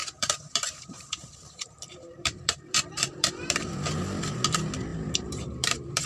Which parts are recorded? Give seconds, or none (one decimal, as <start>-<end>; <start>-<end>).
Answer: 3.7-4.9